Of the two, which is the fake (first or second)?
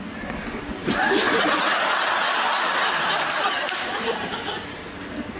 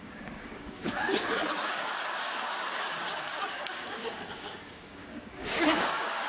second